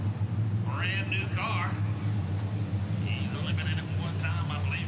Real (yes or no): yes